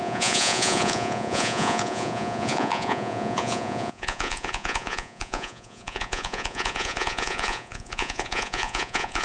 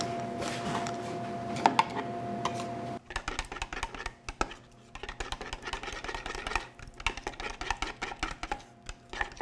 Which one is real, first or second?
second